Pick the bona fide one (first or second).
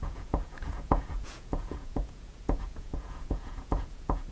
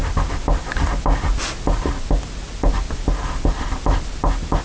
second